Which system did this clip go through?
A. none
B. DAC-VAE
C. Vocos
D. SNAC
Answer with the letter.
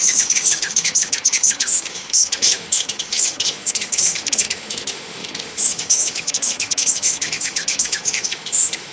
B